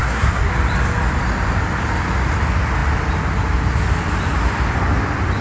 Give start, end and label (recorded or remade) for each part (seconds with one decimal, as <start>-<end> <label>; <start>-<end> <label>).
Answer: 0.0-0.5 remade; 0.5-5.4 recorded